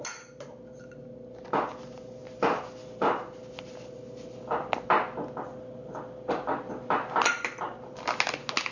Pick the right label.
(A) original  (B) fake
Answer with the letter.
A